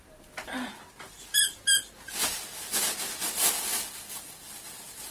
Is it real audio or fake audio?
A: real